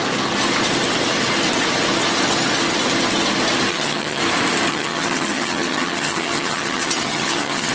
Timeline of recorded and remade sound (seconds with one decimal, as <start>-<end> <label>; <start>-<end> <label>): 0.0-3.7 recorded; 3.7-4.2 remade; 4.2-4.7 recorded; 4.7-7.7 remade